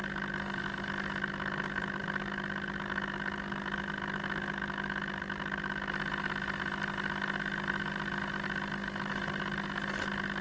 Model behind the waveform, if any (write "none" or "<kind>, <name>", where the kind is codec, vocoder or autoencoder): none